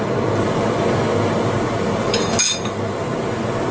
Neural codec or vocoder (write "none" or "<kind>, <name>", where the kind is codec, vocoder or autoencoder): none